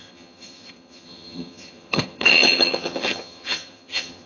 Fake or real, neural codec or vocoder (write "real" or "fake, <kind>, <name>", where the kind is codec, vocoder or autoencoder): fake, vocoder, HiFi-GAN